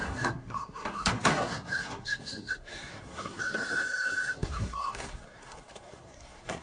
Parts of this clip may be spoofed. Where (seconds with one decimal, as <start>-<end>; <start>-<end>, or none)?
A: 0.0-6.6